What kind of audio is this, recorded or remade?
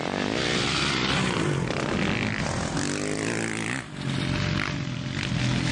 recorded